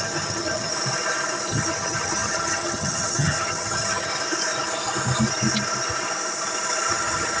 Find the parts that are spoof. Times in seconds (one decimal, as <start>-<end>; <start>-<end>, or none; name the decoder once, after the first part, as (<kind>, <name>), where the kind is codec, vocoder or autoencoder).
0.0-0.7 (vocoder, HiFi-GAN); 1.5-4.1; 6.9-7.4